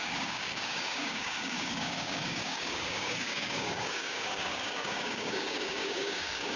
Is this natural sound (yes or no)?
no